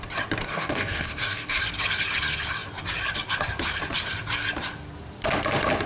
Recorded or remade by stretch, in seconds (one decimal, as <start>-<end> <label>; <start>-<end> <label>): 0.0-0.5 recorded; 0.5-1.6 remade; 1.6-5.9 recorded